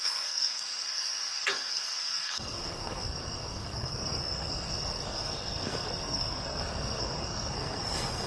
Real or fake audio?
fake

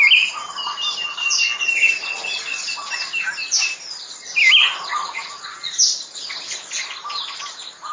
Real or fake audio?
real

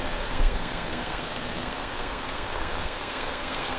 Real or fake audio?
fake